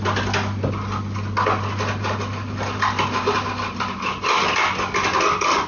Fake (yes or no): no